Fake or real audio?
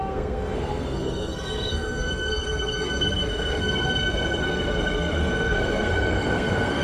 fake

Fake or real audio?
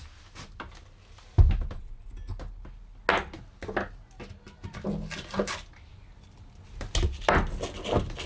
real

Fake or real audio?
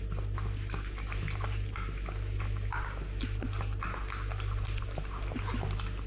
real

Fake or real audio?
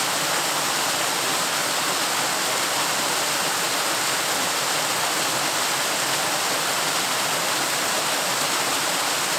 real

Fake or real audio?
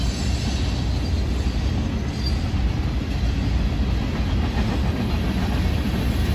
real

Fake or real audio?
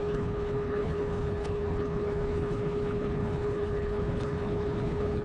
fake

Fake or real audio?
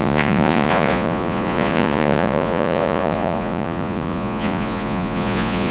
fake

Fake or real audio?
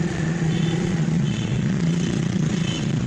fake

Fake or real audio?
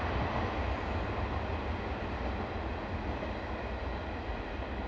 real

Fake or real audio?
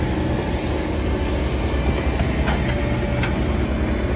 real